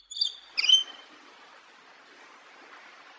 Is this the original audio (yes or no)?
yes